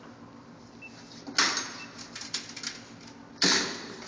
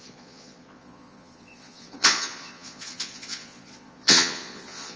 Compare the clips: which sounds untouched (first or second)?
first